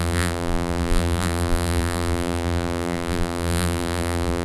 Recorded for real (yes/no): no